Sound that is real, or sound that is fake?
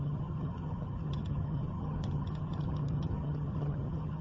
fake